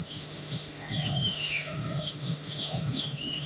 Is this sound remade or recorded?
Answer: remade